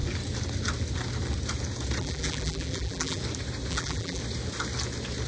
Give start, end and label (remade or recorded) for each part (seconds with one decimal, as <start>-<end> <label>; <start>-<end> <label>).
0.0-2.0 recorded; 2.0-3.2 remade; 3.2-3.7 recorded; 3.7-4.2 remade; 4.2-5.3 recorded